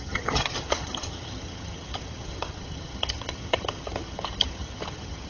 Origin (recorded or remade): remade